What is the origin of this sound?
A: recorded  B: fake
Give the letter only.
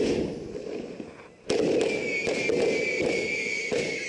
A